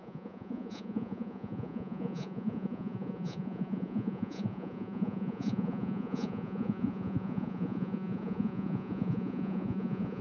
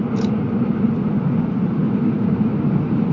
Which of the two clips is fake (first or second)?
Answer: first